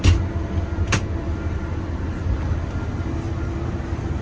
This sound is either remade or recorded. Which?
recorded